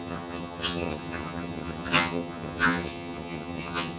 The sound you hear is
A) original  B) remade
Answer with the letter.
B